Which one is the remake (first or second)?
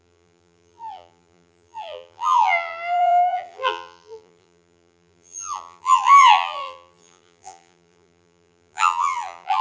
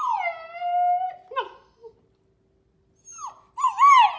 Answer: first